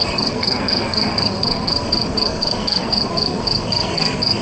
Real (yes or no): no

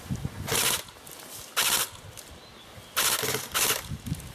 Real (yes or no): yes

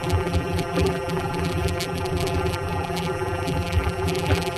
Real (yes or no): no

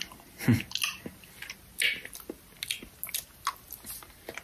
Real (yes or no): yes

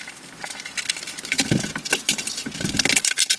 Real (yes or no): yes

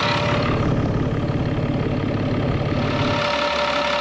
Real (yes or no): yes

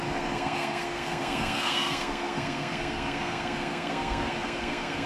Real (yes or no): no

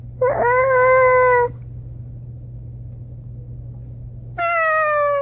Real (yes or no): yes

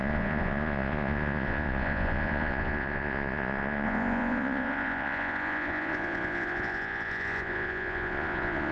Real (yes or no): no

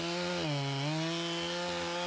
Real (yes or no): yes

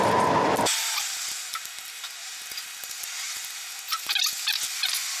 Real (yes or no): yes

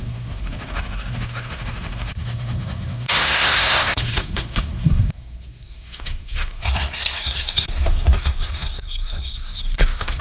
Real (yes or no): no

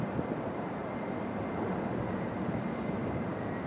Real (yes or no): yes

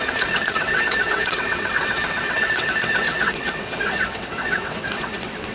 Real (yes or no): no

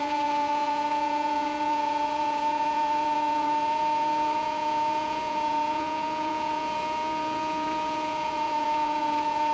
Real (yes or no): no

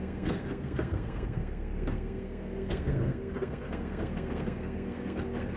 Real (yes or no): no